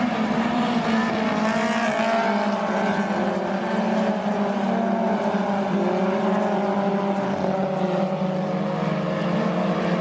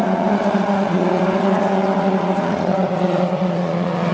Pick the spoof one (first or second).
second